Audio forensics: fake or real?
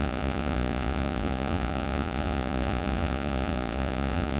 fake